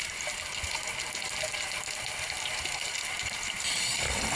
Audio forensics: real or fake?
fake